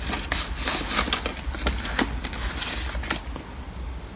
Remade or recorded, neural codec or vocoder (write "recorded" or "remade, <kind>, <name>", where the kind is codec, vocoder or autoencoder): recorded